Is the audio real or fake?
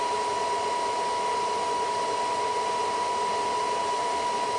real